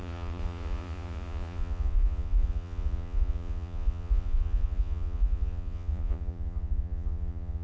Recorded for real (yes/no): no